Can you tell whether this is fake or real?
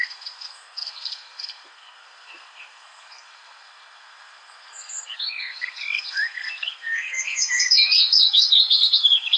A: fake